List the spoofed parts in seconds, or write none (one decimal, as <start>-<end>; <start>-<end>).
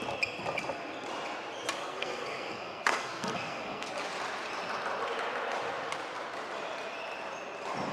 1.8-3.9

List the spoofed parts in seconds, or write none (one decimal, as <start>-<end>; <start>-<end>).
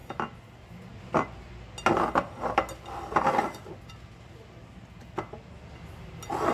none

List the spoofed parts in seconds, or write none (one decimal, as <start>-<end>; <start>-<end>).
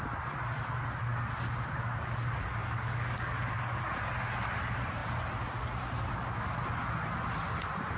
2.6-3.8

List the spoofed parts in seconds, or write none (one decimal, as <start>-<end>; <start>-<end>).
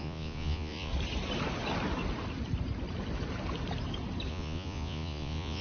0.0-0.9; 4.3-5.6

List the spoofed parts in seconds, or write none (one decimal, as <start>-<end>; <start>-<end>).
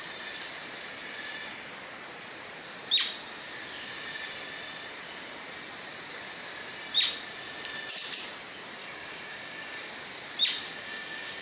8.8-9.9; 10.6-11.4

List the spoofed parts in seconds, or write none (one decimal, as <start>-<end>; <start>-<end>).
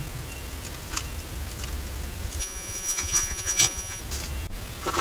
2.4-4.0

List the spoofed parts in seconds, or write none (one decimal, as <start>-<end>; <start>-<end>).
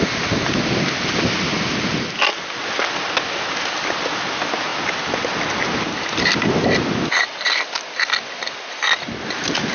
none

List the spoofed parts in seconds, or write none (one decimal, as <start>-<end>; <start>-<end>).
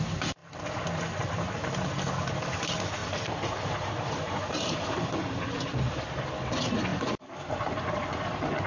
3.0-6.0; 6.9-8.2